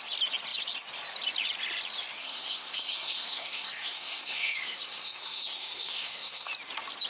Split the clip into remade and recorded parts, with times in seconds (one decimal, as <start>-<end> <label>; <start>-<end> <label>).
0.0-2.2 recorded; 2.2-6.5 remade; 6.5-7.1 recorded